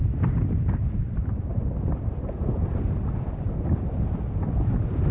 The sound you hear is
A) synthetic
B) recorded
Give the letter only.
B